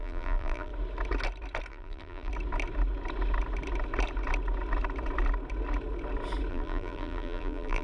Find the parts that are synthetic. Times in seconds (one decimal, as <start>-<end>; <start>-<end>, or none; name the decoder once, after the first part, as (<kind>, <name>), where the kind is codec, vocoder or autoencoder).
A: 0.0-0.7 (vocoder, BigVGAN v2); 1.7-2.3; 6.5-7.8